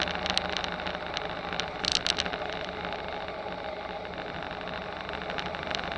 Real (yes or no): yes